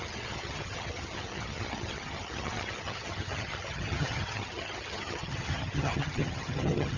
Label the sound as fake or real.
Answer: fake